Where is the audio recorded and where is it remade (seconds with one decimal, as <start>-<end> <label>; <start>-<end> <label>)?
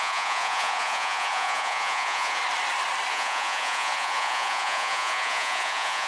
0.0-2.4 remade; 2.4-3.1 recorded; 3.1-6.1 remade